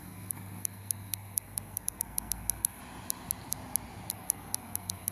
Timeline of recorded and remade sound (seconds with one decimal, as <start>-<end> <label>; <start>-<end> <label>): 0.0-2.8 remade; 2.8-4.1 recorded; 4.1-5.1 remade